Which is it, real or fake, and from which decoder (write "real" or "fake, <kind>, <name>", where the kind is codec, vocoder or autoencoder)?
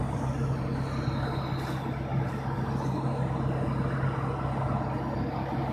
real